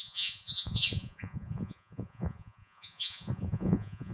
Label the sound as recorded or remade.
remade